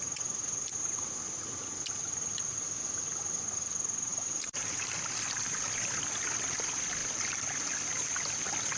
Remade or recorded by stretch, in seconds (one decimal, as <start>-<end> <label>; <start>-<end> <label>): 0.0-4.1 recorded; 4.1-5.0 remade; 5.0-8.8 recorded